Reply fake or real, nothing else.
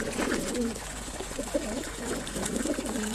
fake